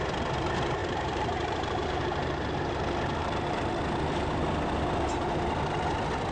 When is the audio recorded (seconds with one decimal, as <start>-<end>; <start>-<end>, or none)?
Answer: 0.0-0.8; 2.5-3.2; 3.7-6.3